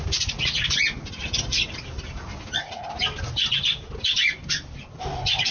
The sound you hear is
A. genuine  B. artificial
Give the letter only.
A